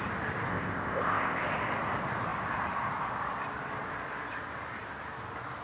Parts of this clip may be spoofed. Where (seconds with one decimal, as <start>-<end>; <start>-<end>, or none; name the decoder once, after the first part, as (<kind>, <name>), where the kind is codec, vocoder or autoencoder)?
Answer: 0.5-1.4 (codec, ZipCodec)